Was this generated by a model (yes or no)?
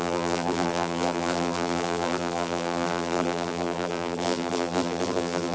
yes